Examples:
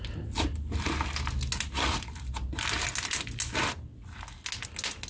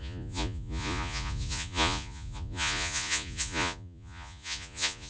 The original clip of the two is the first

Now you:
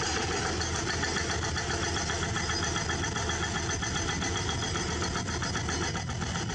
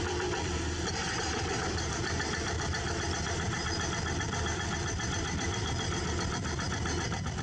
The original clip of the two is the first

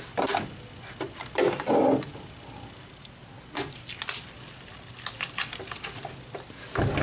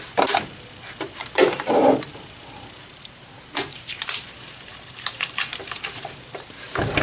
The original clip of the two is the first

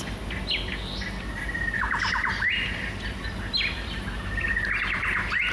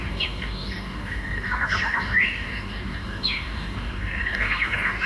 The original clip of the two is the first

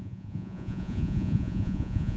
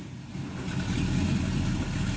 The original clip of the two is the second